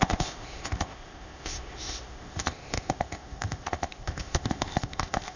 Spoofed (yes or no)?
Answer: yes